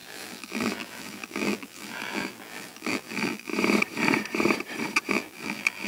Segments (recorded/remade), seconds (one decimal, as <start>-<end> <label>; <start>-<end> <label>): 0.0-3.5 remade; 3.5-5.1 recorded; 5.1-5.9 remade